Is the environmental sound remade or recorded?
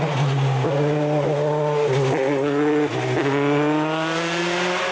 recorded